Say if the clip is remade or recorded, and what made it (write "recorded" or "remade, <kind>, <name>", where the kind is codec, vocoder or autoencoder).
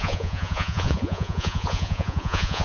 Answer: remade, vocoder, Vocos